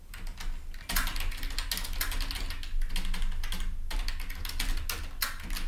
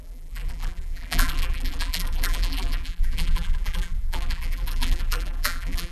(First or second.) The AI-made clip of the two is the second